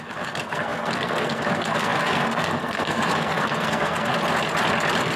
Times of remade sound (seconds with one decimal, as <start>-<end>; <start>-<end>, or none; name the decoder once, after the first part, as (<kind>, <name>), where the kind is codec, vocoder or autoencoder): 0.0-4.1 (codec, SNAC)